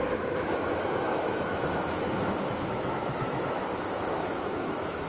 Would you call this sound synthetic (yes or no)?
yes